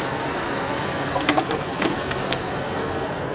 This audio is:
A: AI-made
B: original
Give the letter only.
A